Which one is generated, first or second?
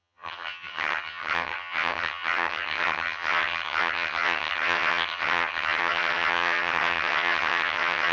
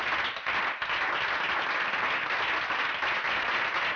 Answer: first